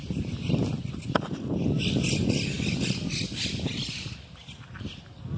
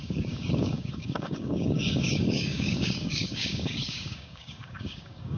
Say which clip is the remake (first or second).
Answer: second